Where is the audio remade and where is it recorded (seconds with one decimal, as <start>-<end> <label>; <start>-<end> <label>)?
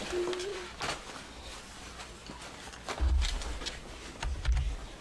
0.0-5.0 recorded